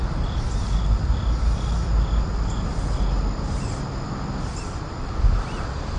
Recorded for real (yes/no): yes